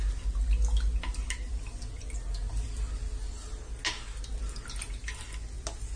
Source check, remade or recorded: recorded